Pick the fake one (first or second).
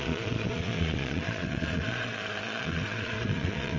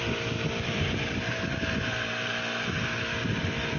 first